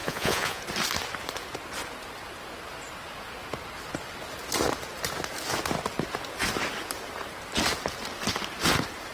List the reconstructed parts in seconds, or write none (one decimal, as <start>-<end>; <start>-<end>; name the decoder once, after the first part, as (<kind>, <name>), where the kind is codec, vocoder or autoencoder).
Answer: 0.0-0.6 (vocoder, Vocos)